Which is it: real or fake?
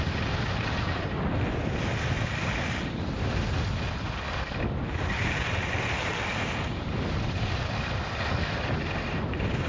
real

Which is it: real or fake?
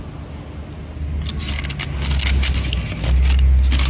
real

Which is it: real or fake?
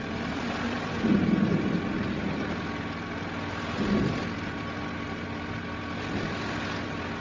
real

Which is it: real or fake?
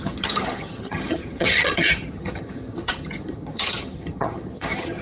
fake